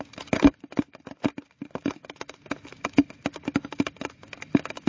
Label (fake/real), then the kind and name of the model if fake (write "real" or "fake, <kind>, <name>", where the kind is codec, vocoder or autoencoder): fake, vocoder, BigVGAN v2